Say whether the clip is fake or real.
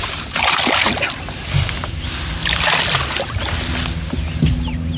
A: real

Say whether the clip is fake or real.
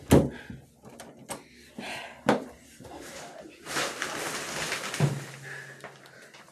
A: real